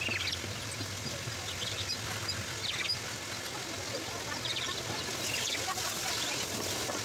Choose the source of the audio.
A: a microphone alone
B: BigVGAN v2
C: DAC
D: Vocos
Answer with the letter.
A